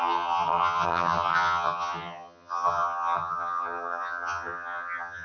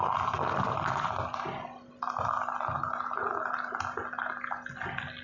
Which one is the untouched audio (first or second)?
second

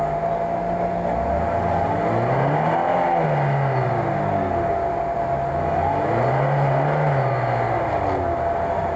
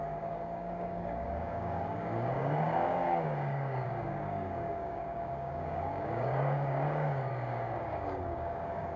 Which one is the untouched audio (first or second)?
first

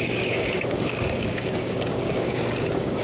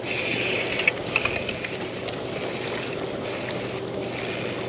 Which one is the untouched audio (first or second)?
second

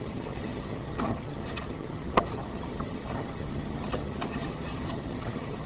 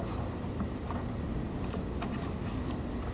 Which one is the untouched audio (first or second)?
second